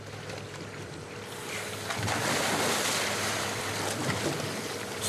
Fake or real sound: real